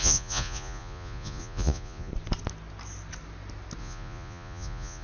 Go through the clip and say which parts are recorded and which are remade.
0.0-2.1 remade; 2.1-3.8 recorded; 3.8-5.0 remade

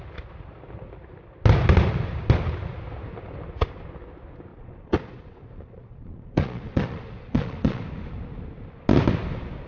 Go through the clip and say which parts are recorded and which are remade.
0.0-4.5 recorded; 4.5-7.8 remade; 7.8-9.7 recorded

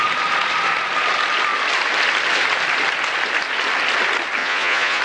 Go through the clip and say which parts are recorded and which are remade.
0.0-4.4 recorded; 4.4-5.0 remade

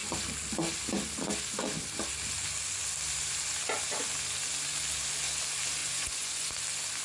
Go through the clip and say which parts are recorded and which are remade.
0.0-5.8 recorded; 5.8-6.6 remade; 6.6-7.0 recorded